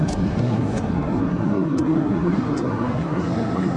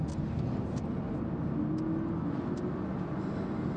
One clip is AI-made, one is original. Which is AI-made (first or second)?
first